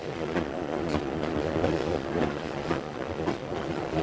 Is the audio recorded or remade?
remade